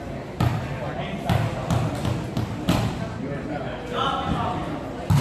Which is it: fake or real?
real